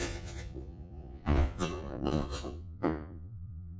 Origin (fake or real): fake